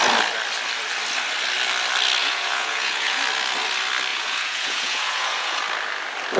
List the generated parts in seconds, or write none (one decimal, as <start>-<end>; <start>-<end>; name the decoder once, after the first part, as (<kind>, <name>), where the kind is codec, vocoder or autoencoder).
2.2-3.2 (vocoder, Vocos); 4.1-5.6